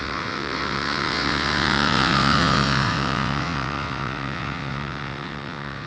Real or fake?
fake